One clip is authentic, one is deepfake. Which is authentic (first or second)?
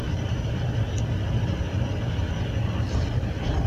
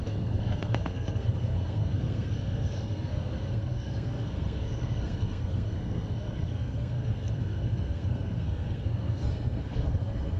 first